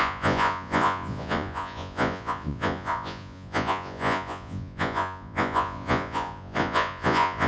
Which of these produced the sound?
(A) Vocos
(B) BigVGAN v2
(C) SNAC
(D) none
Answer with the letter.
A